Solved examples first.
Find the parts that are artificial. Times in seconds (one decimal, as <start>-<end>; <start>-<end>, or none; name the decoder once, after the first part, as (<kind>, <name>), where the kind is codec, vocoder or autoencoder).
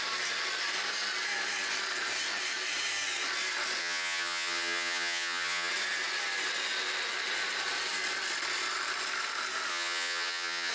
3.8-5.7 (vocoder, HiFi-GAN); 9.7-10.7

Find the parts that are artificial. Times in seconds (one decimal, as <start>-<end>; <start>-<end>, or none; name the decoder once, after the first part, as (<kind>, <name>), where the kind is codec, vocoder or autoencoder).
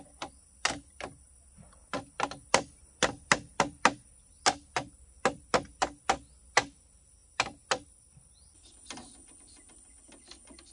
none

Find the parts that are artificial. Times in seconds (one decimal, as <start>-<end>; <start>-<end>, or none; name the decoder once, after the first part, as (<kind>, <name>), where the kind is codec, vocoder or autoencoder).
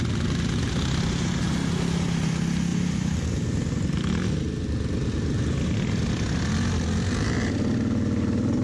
none